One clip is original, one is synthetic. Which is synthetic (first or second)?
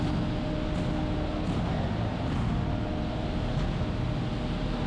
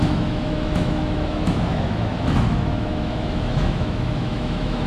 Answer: second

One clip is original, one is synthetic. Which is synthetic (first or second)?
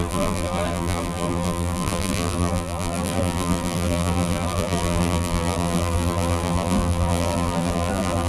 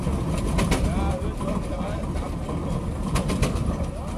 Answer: first